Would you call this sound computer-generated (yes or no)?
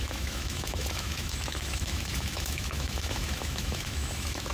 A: yes